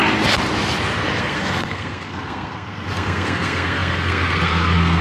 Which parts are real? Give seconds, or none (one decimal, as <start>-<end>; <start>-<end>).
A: 0.0-1.2